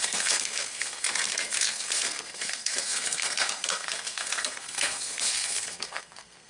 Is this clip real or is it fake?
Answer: fake